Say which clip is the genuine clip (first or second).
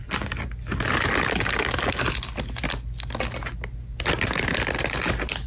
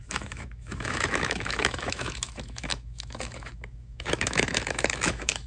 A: first